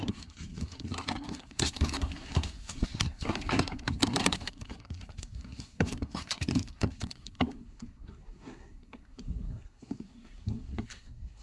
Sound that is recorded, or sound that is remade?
remade